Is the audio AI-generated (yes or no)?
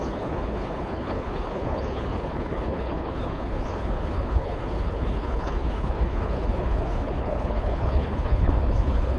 yes